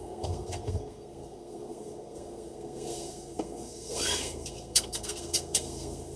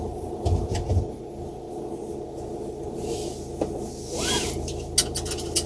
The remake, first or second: first